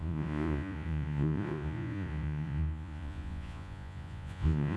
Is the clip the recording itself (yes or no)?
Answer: no